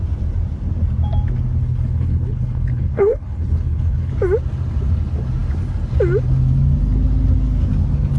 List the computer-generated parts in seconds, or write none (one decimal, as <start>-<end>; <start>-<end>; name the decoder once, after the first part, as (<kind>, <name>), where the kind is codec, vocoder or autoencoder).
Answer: 1.6-4.1 (codec, HILCodec)